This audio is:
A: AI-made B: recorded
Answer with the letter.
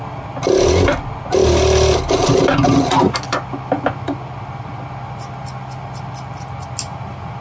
B